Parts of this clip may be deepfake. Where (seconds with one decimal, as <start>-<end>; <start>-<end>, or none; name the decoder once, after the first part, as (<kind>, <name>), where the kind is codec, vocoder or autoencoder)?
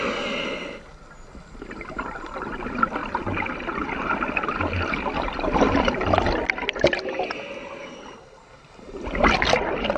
none